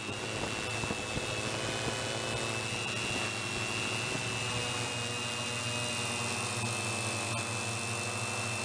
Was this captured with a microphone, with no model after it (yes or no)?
yes